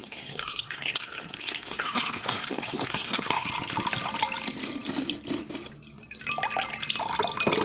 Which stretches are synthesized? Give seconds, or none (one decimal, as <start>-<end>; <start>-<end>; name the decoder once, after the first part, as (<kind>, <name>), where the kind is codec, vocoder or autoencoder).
0.0-3.5 (codec, SNAC)